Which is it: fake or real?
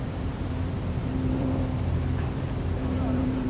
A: fake